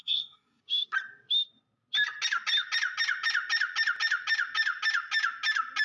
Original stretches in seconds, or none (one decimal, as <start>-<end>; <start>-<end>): 0.6-5.8